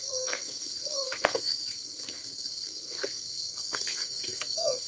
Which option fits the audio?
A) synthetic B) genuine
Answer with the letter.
A